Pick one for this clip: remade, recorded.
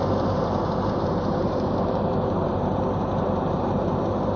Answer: remade